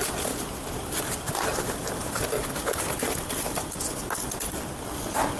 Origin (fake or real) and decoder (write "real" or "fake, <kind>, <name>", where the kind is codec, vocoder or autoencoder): real